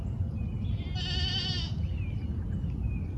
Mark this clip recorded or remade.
recorded